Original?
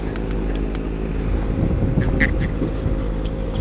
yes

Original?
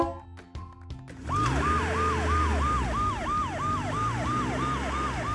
yes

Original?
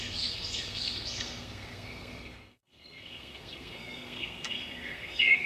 no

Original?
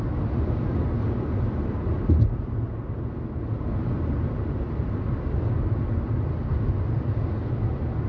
yes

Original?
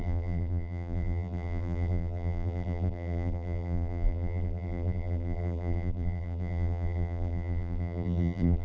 no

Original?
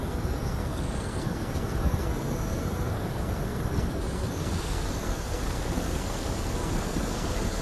no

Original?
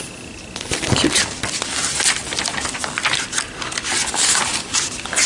yes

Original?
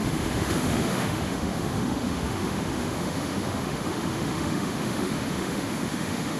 no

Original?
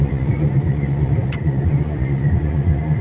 no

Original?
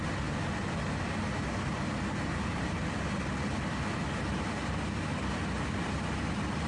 yes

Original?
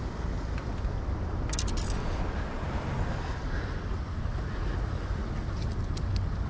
yes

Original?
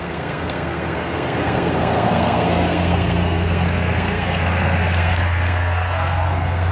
no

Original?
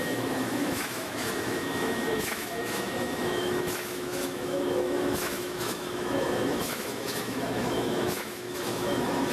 no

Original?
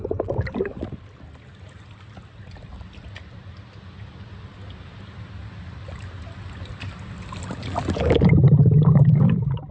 yes